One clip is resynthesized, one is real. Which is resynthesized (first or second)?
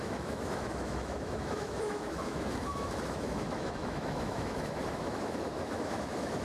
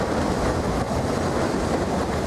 first